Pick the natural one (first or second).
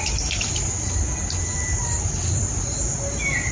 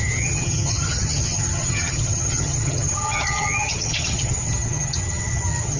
first